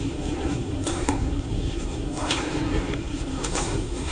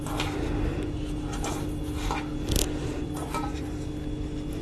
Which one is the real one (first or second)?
second